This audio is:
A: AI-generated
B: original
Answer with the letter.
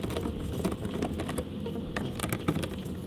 B